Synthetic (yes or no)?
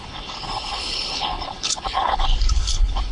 yes